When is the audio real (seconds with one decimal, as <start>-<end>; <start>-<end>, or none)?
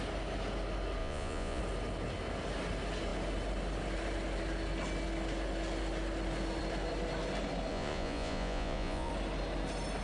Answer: 0.0-1.0; 1.6-7.7; 9.1-10.0